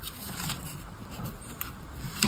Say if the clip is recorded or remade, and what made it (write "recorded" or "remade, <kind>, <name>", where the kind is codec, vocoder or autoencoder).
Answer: remade, vocoder, BigVGAN v2